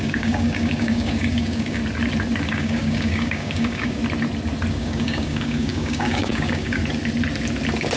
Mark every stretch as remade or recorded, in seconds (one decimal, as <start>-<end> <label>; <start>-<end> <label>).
0.0-1.8 remade; 1.8-2.5 recorded; 2.5-4.0 remade; 4.0-4.7 recorded; 4.7-6.8 remade; 6.8-8.0 recorded